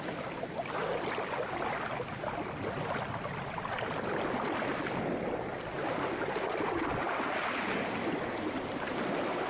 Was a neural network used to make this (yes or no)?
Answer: no